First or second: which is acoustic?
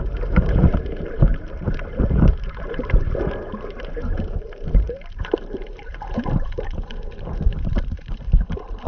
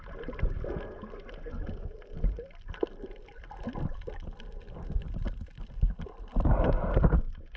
second